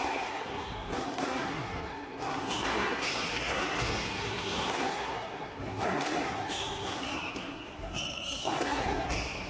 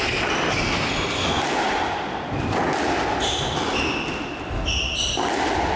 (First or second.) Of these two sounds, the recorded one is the second